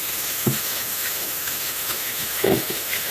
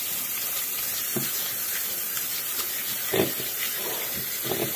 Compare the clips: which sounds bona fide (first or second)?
second